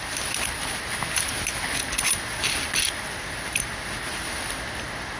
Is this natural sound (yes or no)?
yes